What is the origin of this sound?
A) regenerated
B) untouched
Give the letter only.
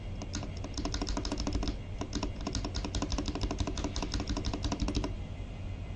B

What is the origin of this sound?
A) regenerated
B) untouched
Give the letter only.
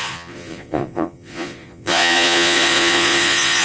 A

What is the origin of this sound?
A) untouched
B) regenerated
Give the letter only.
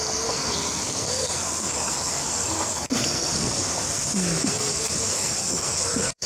B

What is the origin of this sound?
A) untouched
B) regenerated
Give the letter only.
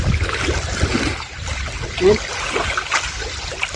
A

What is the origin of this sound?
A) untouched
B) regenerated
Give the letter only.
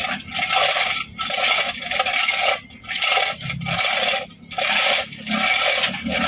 A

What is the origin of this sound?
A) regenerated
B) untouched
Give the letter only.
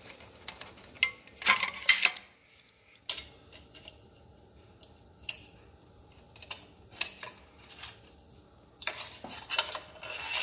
B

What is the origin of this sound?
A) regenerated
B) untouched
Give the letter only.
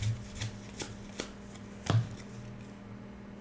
B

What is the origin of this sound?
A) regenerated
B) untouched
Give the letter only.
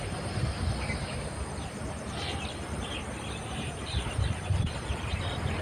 A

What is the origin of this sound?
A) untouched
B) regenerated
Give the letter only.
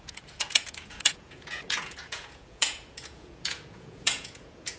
B